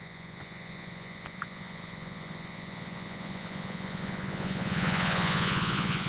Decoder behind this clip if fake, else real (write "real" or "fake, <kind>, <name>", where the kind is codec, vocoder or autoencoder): fake, vocoder, Vocos